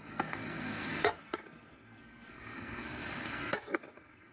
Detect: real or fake fake